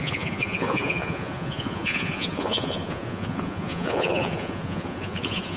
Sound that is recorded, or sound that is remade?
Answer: remade